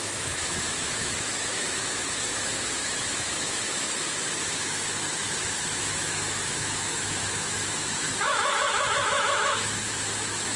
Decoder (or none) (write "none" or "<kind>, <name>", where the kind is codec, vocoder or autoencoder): autoencoder, DAC-VAE